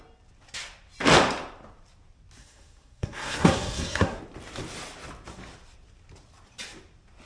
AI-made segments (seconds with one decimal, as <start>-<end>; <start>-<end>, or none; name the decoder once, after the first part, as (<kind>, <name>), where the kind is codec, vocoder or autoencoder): 2.4-4.2 (codec, SNAC)